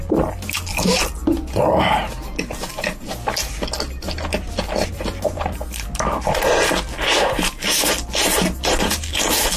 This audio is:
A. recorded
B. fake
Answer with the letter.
A